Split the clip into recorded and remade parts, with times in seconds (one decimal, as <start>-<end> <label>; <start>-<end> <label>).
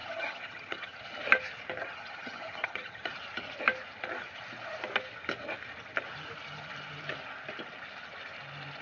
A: 0.0-1.0 remade; 1.0-1.8 recorded; 1.8-3.0 remade; 3.0-8.8 recorded